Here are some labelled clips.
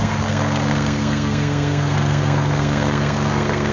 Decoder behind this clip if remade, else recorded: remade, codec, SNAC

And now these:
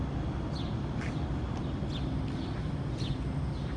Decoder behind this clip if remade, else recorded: recorded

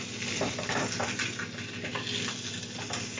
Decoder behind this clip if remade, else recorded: recorded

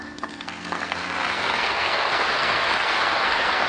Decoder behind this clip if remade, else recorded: remade, codec, SNAC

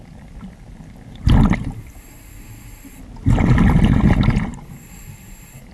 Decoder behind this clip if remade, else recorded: recorded